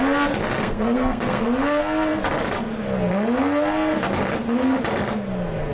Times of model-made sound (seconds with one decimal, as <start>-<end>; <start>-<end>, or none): 0.6-1.4